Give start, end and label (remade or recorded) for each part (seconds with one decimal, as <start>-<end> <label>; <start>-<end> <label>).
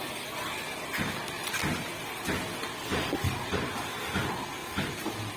0.0-5.4 recorded